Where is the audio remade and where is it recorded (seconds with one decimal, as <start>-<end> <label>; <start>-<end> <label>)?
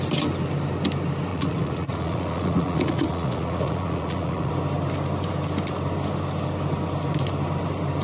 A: 0.0-1.3 recorded; 1.3-4.5 remade; 4.5-8.0 recorded